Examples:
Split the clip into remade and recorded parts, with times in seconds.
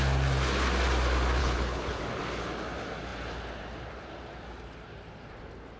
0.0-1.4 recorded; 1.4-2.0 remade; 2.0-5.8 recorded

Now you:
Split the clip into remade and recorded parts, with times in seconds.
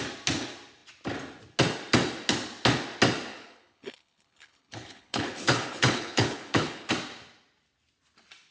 0.0-3.3 recorded; 3.3-6.9 remade; 6.9-8.5 recorded